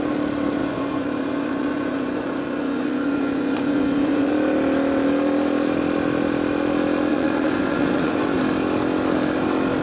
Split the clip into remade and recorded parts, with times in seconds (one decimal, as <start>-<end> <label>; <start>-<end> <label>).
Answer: 0.0-0.6 recorded; 0.6-4.3 remade; 4.3-7.1 recorded; 7.1-8.4 remade; 8.4-9.8 recorded